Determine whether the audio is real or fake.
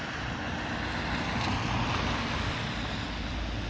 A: real